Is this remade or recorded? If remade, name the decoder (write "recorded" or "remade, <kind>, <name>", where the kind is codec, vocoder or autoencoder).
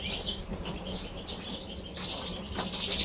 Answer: recorded